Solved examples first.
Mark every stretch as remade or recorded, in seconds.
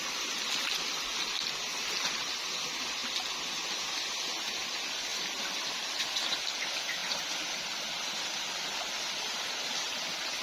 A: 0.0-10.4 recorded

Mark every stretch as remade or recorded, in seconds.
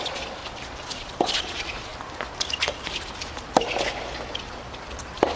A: 0.0-0.4 remade; 0.4-1.4 recorded; 1.4-1.9 remade; 1.9-5.4 recorded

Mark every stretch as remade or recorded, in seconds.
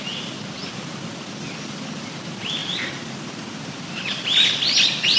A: 0.0-0.6 remade; 0.6-1.2 recorded; 1.2-2.6 remade; 2.6-3.7 recorded; 3.7-5.2 remade